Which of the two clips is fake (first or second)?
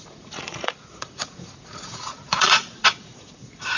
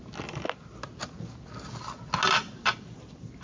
first